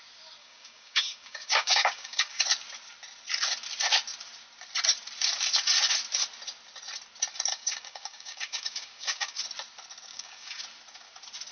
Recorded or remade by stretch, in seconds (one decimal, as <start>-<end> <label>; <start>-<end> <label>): 0.0-0.4 recorded; 0.4-2.4 remade; 2.4-7.5 recorded; 7.5-9.4 remade; 9.4-10.1 recorded; 10.1-10.6 remade; 10.6-11.5 recorded